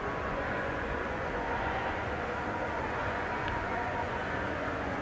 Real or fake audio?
fake